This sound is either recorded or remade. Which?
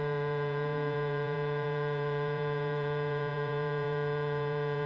remade